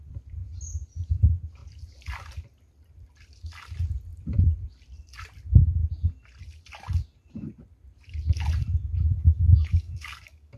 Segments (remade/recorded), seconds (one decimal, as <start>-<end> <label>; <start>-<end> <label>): 0.0-9.2 recorded; 9.2-10.6 remade